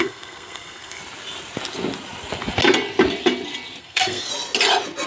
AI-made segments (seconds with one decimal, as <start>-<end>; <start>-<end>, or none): 0.0-1.0; 3.8-4.3